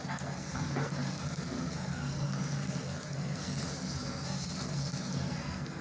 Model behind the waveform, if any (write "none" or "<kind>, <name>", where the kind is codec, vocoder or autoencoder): codec, SNAC